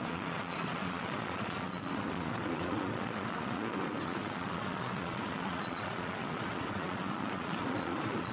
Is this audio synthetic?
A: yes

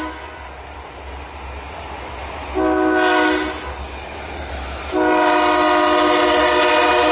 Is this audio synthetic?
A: no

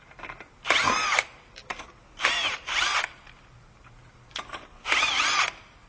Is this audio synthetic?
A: no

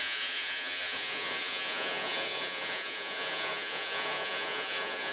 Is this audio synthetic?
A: yes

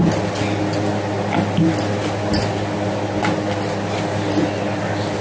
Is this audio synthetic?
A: no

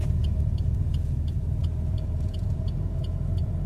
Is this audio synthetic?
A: yes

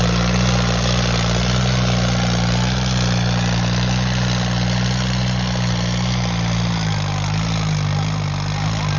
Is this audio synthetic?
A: no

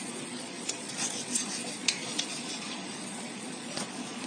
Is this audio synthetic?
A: yes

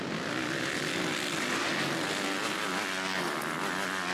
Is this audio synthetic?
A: no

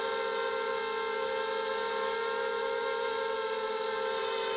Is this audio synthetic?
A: no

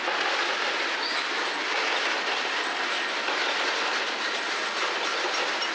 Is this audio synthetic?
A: no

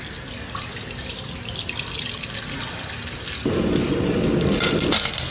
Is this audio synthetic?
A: no